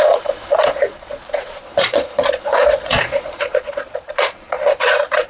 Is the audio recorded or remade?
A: remade